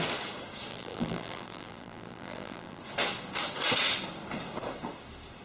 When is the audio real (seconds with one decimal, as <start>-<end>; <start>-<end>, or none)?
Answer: 0.0-0.7; 2.8-5.4